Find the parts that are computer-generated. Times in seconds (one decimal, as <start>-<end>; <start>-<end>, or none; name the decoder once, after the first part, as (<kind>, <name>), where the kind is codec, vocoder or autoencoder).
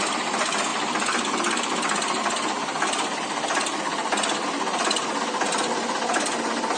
0.7-2.2 (vocoder, BigVGAN v2)